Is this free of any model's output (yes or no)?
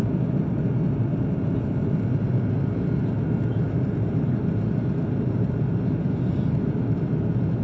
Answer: yes